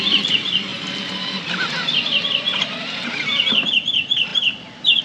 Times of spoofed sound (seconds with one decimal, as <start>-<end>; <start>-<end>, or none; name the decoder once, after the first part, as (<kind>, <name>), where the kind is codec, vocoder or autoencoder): none